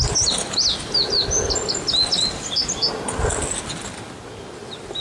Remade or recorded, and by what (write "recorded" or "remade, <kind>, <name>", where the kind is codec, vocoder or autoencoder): recorded